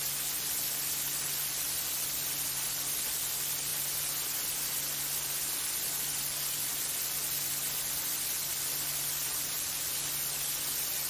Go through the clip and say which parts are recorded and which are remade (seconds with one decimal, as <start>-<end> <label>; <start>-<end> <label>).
0.0-9.3 recorded; 9.3-9.9 remade; 9.9-11.1 recorded